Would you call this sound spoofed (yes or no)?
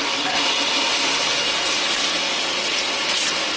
no